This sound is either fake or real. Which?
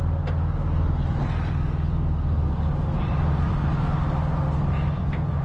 real